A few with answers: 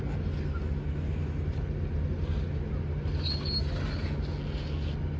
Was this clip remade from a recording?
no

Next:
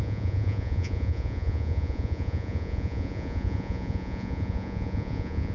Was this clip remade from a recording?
yes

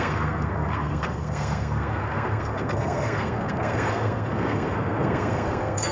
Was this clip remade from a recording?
yes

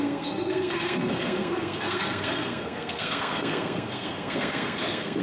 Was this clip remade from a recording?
yes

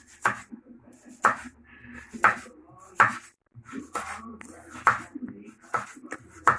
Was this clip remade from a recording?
yes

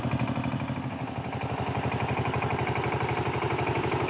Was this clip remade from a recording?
no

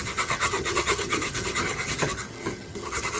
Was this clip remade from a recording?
yes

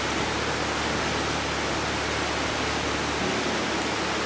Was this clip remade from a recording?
no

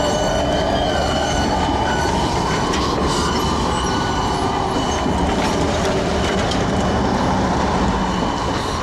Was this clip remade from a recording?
no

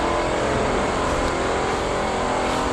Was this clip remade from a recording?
no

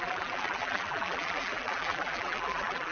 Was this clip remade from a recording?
yes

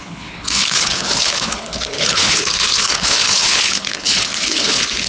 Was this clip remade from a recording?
yes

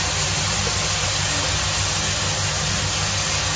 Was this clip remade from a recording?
no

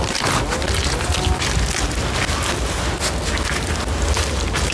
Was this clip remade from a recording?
no